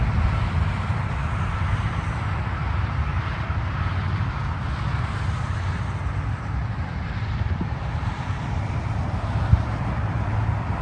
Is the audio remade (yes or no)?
yes